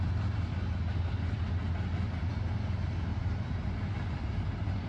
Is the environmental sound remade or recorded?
recorded